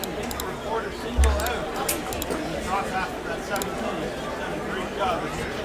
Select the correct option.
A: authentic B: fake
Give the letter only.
A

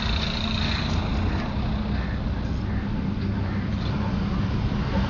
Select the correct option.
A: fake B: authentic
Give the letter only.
B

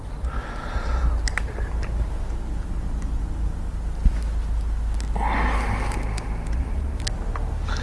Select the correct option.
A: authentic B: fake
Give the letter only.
A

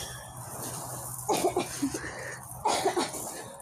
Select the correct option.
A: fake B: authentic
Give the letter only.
B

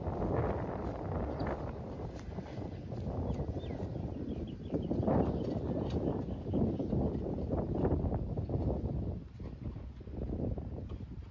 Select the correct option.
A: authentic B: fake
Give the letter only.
A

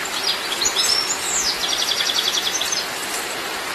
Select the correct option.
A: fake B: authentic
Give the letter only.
B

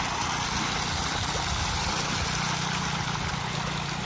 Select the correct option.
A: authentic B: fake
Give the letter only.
A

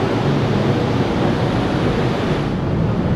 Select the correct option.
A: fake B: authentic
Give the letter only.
B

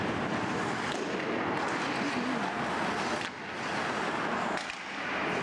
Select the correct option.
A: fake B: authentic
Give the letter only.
B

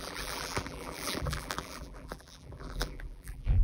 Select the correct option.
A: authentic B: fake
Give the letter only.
B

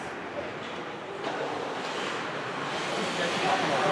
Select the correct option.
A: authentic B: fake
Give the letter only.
A